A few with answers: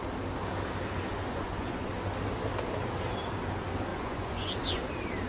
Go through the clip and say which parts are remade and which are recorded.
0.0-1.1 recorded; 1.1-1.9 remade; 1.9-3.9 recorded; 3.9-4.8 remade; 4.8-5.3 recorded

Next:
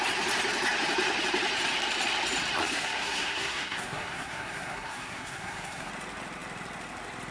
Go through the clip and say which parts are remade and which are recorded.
0.0-2.6 recorded; 2.6-5.9 remade; 5.9-7.3 recorded

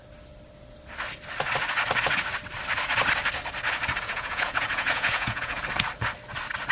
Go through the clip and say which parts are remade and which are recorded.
0.0-4.0 recorded; 4.0-5.6 remade; 5.6-6.7 recorded

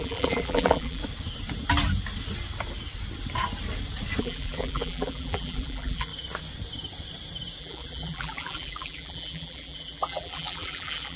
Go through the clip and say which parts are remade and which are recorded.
0.0-1.0 remade; 1.0-4.2 recorded; 4.2-6.1 remade; 6.1-7.6 recorded; 7.6-11.2 remade

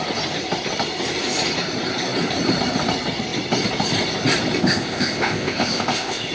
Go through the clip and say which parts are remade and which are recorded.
0.0-4.6 recorded; 4.6-6.3 remade

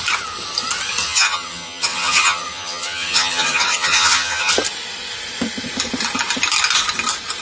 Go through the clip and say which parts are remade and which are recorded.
0.0-1.0 recorded; 1.0-4.5 remade; 4.5-7.4 recorded

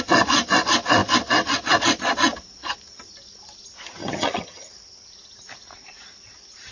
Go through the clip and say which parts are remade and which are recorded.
0.0-4.0 recorded; 4.0-4.7 remade; 4.7-6.7 recorded

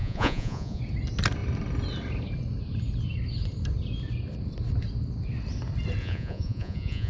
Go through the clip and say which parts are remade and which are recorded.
0.0-0.8 remade; 0.8-6.0 recorded; 6.0-7.1 remade